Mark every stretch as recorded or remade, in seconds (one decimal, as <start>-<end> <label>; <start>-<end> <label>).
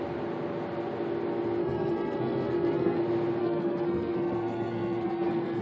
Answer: 0.0-1.6 recorded; 1.6-3.0 remade; 3.0-3.4 recorded; 3.4-5.6 remade